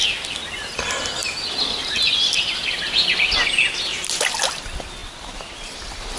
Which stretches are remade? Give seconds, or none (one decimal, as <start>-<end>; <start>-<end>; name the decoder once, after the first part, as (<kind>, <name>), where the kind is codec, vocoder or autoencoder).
none